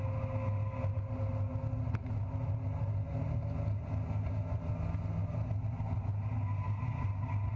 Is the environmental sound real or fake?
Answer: real